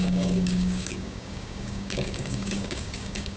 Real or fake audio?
fake